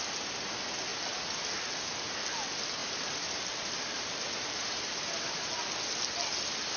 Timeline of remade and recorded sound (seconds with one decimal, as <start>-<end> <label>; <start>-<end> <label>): 0.0-2.8 recorded; 2.8-5.5 remade; 5.5-6.8 recorded